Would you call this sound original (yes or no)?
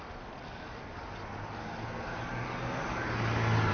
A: yes